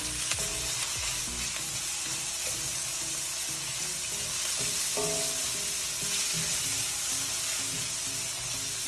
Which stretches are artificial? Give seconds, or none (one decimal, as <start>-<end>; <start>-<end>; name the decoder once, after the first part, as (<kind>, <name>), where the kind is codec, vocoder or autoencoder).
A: none